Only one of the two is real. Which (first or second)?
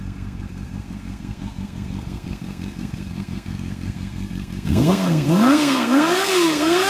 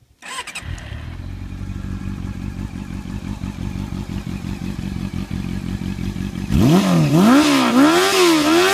second